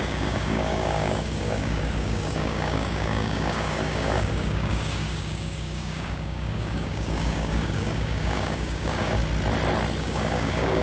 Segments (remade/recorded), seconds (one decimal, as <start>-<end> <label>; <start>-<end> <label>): 0.0-9.2 remade; 9.2-10.0 recorded; 10.0-10.8 remade